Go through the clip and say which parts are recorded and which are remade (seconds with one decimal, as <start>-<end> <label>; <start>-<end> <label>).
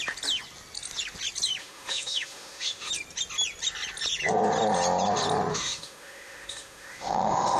0.0-1.6 recorded; 1.6-2.9 remade; 2.9-5.5 recorded; 5.5-7.6 remade